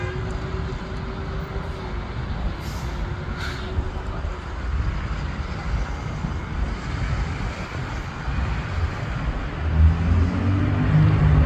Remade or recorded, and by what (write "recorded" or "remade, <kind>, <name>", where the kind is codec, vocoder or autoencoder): recorded